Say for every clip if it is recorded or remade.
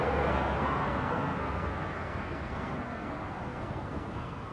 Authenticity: remade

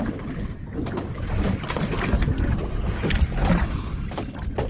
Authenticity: recorded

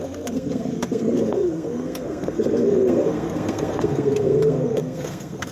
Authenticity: remade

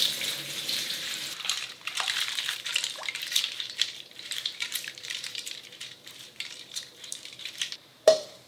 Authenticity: remade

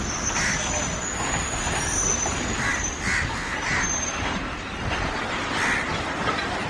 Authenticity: recorded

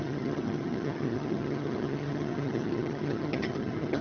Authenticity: remade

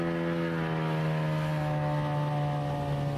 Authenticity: recorded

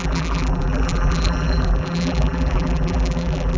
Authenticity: remade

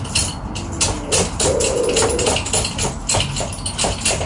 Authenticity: recorded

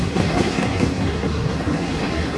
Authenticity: remade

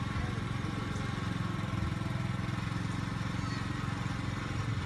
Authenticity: recorded